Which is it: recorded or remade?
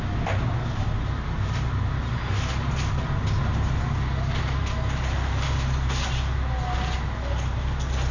recorded